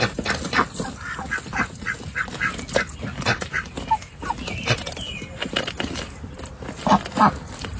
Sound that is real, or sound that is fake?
real